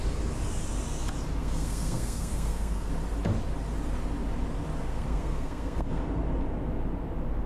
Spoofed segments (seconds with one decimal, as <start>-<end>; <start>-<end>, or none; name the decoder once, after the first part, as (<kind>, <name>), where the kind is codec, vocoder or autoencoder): 1.4-2.9 (codec, SNAC); 4.9-6.0